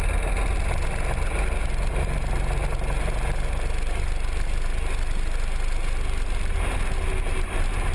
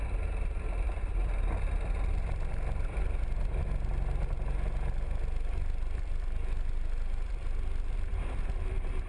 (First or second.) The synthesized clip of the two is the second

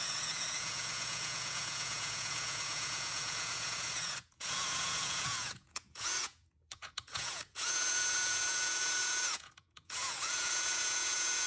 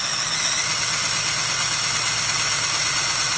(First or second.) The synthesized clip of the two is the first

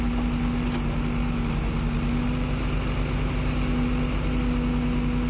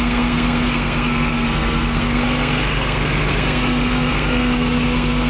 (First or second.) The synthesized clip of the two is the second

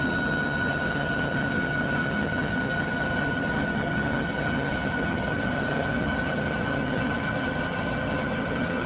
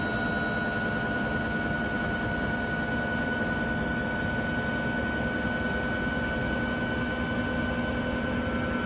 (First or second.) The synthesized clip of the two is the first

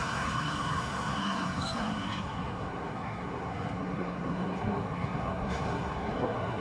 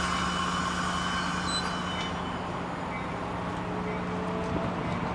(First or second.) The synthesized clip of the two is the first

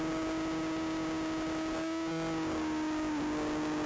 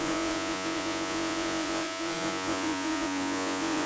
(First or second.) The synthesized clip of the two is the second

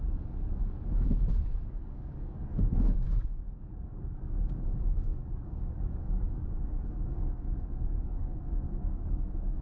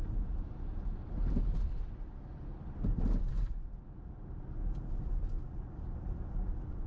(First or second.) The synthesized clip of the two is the first